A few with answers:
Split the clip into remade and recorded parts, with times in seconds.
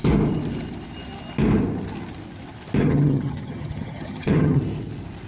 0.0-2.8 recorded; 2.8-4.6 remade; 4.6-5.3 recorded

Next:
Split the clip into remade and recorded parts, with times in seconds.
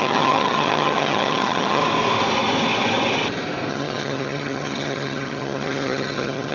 0.0-1.8 remade; 1.8-3.7 recorded; 3.7-6.5 remade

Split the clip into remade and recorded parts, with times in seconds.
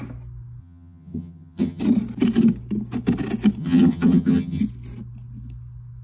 0.0-0.6 recorded; 0.6-1.8 remade; 1.8-3.6 recorded; 3.6-4.6 remade; 4.6-6.0 recorded